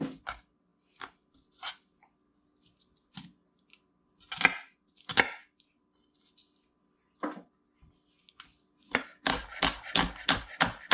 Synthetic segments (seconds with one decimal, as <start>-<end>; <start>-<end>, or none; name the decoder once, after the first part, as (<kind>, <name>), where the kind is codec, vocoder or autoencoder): none